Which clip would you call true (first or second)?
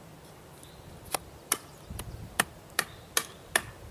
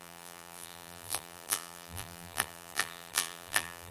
first